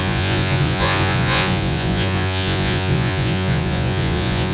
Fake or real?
fake